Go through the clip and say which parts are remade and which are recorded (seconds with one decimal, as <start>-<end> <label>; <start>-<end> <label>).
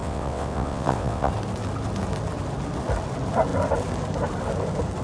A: 0.0-1.3 remade; 1.3-5.0 recorded